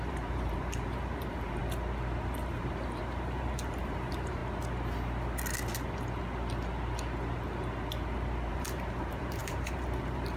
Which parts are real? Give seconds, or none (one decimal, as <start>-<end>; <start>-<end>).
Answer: 1.6-2.2; 4.4-8.5